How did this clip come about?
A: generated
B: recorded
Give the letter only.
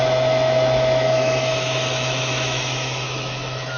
A